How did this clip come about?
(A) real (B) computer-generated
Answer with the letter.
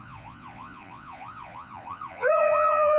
B